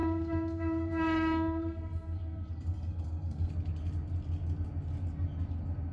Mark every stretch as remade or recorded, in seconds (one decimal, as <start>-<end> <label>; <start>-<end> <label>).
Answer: 0.0-3.5 remade; 3.5-5.9 recorded